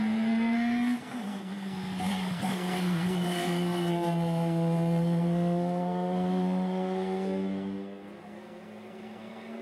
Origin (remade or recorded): remade